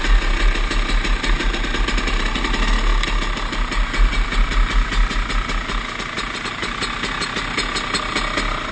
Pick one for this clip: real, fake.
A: real